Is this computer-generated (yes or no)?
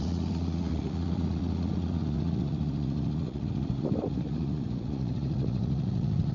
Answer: yes